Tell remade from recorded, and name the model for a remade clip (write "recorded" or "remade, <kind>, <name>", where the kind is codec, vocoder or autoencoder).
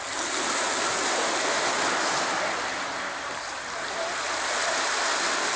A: recorded